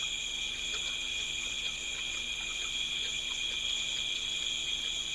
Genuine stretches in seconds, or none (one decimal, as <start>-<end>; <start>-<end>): none